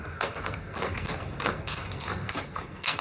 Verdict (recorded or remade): remade